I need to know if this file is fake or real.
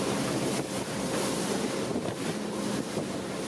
real